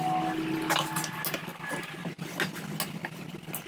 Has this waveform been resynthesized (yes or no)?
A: no